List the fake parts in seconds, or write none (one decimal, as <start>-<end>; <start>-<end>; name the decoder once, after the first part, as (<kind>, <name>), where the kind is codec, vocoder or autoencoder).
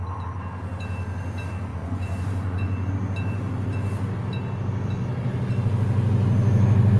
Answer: 1.7-2.9 (vocoder, Vocos)